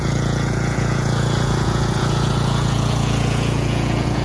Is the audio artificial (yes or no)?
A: yes